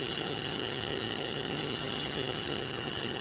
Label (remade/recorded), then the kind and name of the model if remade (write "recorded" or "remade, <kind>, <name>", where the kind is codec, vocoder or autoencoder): remade, vocoder, HiFi-GAN